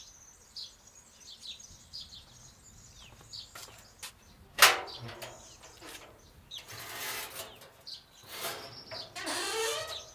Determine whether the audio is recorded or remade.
recorded